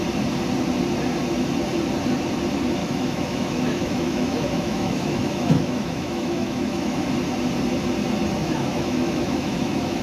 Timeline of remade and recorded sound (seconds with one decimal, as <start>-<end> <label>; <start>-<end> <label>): 0.0-2.8 recorded; 2.8-7.1 remade; 7.1-8.4 recorded; 8.4-10.0 remade

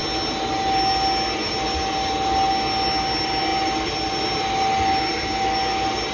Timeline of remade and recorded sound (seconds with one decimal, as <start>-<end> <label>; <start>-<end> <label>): 0.0-6.1 recorded

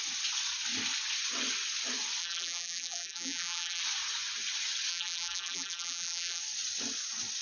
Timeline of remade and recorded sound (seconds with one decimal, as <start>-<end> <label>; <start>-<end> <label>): 0.0-2.2 recorded; 2.2-3.8 remade; 3.8-4.9 recorded; 4.9-6.4 remade; 6.4-7.4 recorded

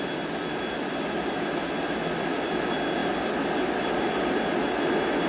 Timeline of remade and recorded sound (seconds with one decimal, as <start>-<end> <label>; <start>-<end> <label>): 0.0-5.3 recorded